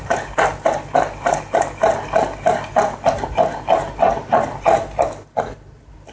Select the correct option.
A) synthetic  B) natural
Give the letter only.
B